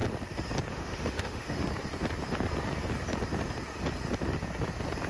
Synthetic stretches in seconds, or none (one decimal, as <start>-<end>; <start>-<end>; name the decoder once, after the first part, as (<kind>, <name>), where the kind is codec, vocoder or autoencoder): 0.7-1.6 (autoencoder, DAC-VAE)